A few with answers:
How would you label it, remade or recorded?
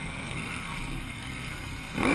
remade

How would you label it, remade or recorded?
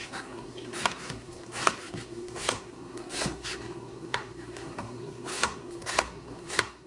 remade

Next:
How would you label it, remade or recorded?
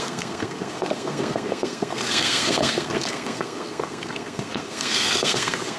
remade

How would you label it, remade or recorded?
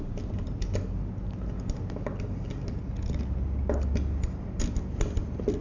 recorded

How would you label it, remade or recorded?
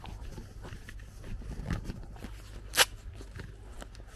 recorded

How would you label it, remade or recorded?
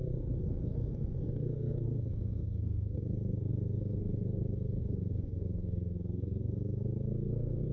remade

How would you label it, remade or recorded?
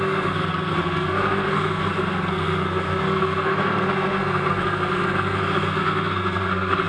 remade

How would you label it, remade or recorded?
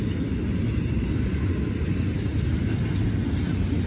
recorded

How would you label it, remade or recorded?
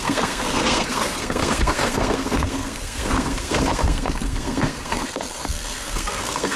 remade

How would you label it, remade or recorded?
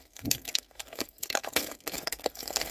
remade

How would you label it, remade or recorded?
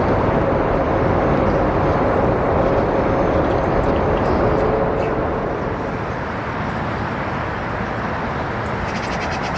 recorded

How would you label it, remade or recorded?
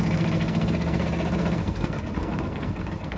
remade